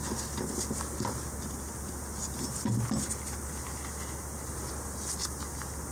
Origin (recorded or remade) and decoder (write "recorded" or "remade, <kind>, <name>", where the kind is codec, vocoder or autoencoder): recorded